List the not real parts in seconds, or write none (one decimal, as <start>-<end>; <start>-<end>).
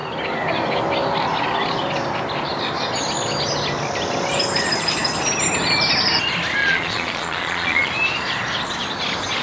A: 6.6-7.9